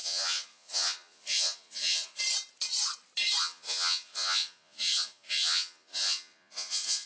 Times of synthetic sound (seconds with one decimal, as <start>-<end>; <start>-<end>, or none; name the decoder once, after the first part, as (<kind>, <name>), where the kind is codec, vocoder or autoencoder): 0.0-2.2 (vocoder, Vocos); 3.4-7.1